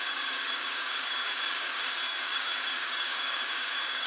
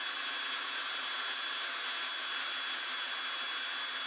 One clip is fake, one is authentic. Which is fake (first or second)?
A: first